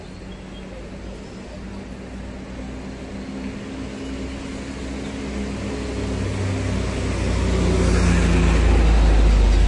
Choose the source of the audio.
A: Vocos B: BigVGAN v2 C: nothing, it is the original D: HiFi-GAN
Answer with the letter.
C